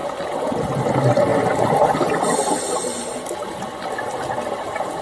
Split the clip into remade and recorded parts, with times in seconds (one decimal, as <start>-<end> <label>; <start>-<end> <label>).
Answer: 0.0-5.0 recorded